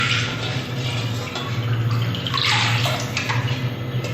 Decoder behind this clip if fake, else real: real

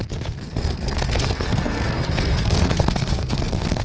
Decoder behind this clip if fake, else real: fake, codec, SNAC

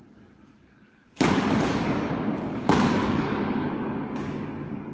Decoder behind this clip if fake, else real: fake, codec, DAC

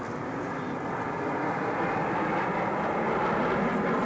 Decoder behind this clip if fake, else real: real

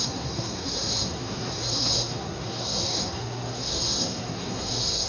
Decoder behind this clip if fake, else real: fake, codec, SNAC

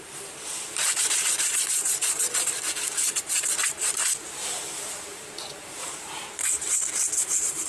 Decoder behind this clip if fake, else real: fake, vocoder, BigVGAN v2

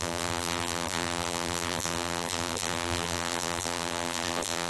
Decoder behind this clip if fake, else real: fake, vocoder, BigVGAN v2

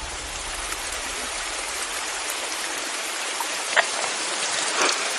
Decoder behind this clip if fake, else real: fake, vocoder, BigVGAN v2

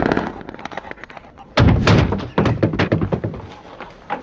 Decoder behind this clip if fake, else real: real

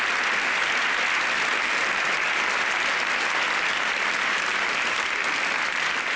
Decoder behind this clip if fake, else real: real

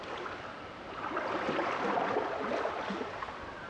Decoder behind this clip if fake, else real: real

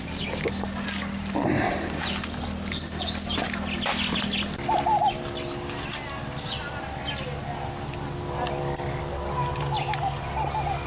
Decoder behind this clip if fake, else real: real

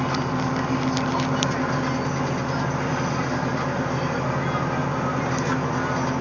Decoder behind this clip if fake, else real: real